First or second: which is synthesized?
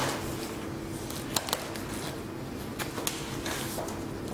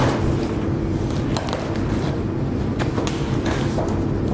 second